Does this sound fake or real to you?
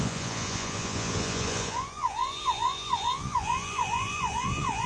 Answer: fake